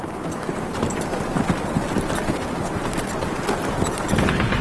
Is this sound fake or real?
real